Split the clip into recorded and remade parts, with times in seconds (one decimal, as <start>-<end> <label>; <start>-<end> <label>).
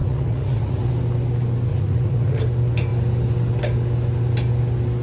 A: 0.0-0.9 remade; 0.9-1.7 recorded; 1.7-2.4 remade; 2.4-5.0 recorded